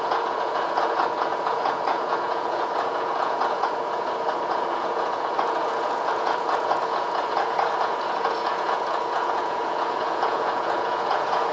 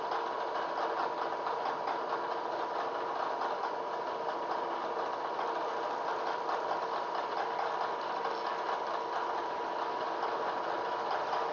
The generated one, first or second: first